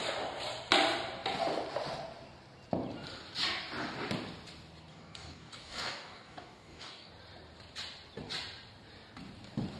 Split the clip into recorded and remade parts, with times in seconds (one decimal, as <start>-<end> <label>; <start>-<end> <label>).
0.0-4.9 recorded; 4.9-7.1 remade; 7.1-9.8 recorded